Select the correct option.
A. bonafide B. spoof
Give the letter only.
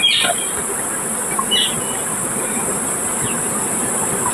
A